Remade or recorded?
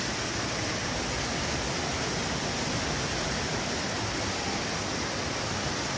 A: recorded